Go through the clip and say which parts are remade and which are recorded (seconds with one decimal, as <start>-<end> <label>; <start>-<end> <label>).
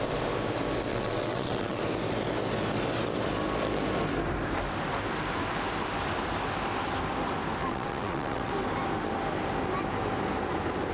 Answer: 0.0-0.9 recorded; 0.9-1.8 remade; 1.8-7.6 recorded; 7.6-8.5 remade; 8.5-10.9 recorded